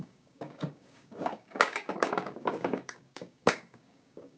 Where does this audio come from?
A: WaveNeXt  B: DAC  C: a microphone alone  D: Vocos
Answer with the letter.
B